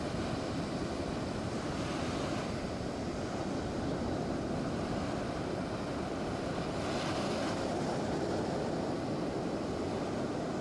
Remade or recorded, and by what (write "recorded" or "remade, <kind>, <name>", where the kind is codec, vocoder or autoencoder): recorded